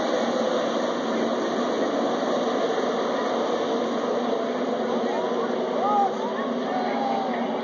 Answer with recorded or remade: recorded